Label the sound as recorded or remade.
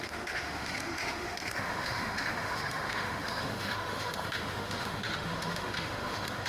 remade